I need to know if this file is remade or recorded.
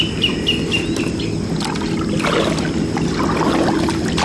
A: recorded